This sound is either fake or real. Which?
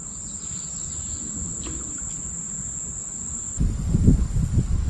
real